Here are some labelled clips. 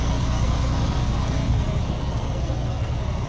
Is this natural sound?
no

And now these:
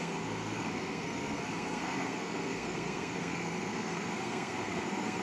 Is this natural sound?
no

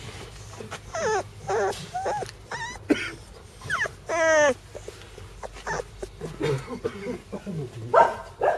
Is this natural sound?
yes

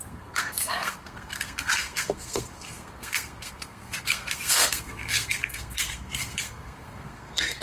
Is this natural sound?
no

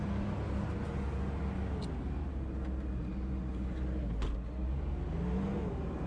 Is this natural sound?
yes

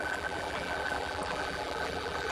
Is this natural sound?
no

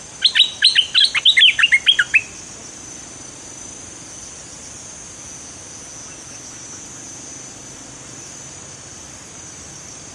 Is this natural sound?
yes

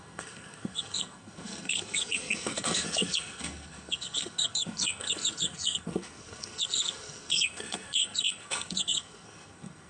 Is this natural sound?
no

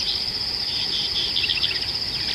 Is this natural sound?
yes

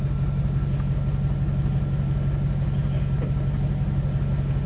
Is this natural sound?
yes